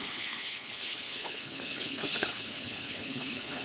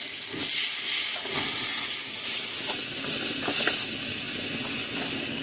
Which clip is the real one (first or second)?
second